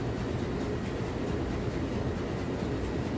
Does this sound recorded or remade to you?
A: recorded